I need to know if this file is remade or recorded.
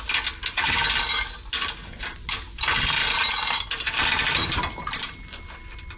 recorded